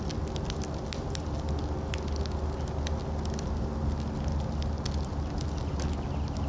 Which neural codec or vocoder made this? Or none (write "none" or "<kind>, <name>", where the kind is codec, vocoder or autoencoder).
none